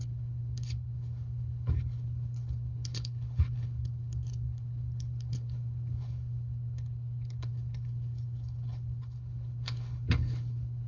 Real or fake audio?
fake